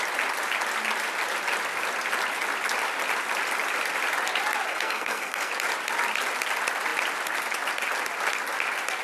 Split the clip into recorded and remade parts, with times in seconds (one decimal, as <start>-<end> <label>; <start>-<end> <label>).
0.0-4.7 recorded; 4.7-5.5 remade; 5.5-9.0 recorded